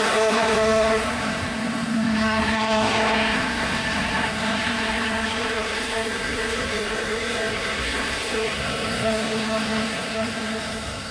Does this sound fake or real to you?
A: fake